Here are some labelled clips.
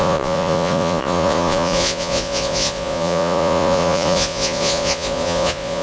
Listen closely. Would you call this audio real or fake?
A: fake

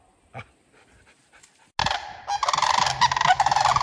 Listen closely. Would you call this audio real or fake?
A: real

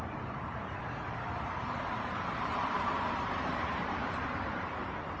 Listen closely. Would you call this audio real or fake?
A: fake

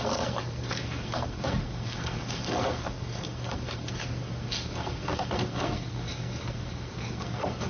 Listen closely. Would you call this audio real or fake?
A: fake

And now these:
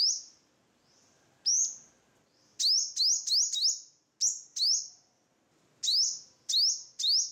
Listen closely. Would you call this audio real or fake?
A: real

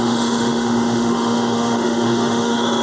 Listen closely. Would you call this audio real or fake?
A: fake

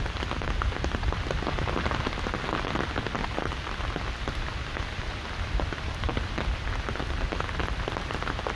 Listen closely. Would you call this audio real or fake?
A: real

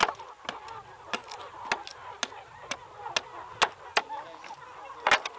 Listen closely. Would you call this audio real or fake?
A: real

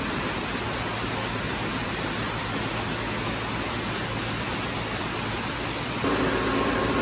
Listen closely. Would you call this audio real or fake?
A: real